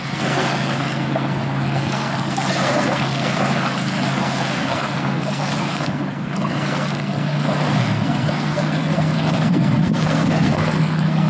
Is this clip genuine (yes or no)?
no